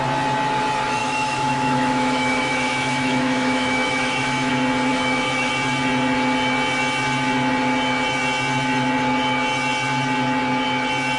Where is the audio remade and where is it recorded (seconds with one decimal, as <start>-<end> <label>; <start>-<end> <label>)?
0.0-1.0 recorded; 1.0-4.5 remade; 4.5-4.9 recorded; 4.9-5.5 remade; 5.5-11.2 recorded